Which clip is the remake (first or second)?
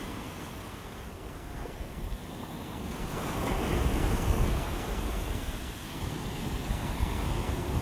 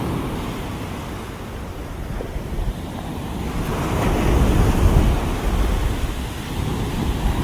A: first